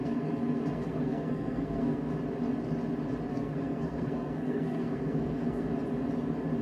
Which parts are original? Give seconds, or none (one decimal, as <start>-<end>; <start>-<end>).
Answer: 2.1-3.3; 5.7-6.6